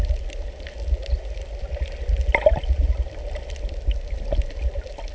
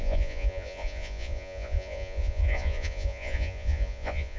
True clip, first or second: first